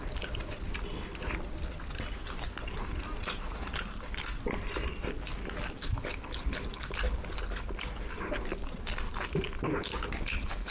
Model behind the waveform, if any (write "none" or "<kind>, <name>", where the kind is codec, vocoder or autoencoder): none